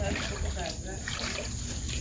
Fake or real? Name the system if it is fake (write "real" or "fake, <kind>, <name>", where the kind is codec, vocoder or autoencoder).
real